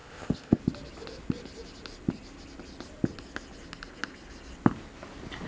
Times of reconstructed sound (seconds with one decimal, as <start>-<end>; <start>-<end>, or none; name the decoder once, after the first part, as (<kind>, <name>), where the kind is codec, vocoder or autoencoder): 0.0-0.6 (codec, ZipCodec)